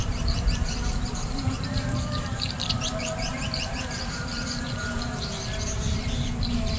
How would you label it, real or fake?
fake